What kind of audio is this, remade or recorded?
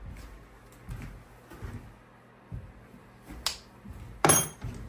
recorded